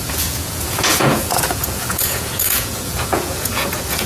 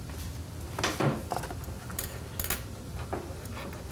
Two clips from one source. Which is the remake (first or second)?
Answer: first